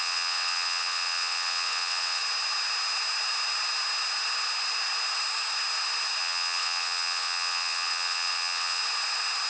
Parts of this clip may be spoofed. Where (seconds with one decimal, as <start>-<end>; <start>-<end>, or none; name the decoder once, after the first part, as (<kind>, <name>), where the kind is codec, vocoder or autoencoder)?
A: 0.0-2.2 (vocoder, WaveNeXt); 6.2-8.8